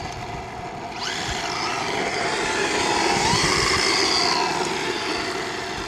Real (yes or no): yes